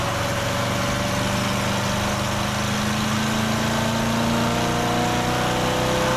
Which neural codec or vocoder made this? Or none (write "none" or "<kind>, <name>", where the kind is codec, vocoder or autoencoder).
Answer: none